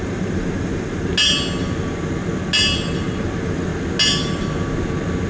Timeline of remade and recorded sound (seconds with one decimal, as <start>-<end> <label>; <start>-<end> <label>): 0.0-1.1 remade; 1.1-3.2 recorded; 3.2-3.7 remade; 3.7-5.3 recorded

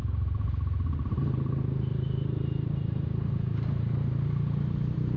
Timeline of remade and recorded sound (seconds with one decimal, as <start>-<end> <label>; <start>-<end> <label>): 0.0-1.2 remade; 1.2-1.9 recorded; 1.9-5.2 remade

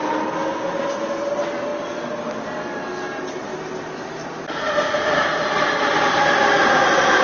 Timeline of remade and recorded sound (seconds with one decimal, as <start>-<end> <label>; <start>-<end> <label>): 0.0-7.2 recorded

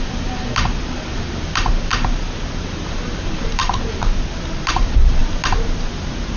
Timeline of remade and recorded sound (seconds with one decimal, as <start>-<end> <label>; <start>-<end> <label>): 0.0-1.9 remade; 1.9-2.8 recorded; 2.8-3.6 remade; 3.6-4.6 recorded; 4.6-5.2 remade; 5.2-6.4 recorded

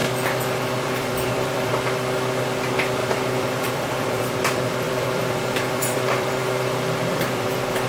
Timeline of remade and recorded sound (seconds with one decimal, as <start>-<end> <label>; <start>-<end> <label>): 0.0-1.7 remade; 1.7-3.0 recorded; 3.0-7.9 remade